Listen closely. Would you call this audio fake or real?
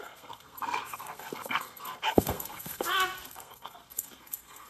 fake